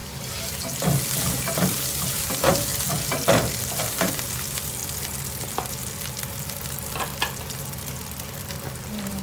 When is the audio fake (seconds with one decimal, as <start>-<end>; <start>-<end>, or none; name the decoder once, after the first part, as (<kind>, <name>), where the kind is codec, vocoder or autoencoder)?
1.2-2.7 (vocoder, BigVGAN v2); 3.8-4.8; 6.3-7.1; 8.7-9.2